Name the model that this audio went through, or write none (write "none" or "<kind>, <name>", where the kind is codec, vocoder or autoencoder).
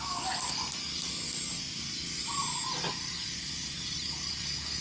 none